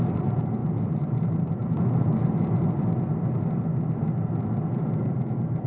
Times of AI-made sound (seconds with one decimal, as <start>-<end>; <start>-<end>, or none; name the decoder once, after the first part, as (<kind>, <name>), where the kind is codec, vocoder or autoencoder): 0.0-1.6 (vocoder, BigVGAN v2); 5.0-5.7